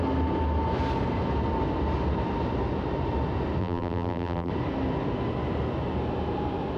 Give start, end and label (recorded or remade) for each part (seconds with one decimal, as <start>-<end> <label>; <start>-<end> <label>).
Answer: 0.0-3.6 recorded; 3.6-4.5 remade; 4.5-6.8 recorded